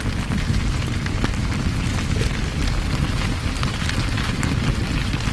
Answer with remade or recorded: recorded